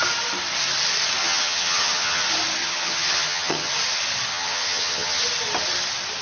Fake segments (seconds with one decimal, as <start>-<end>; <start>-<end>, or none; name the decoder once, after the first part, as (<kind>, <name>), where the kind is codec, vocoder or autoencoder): 1.2-2.2 (vocoder, HiFi-GAN); 2.6-3.7; 4.3-5.2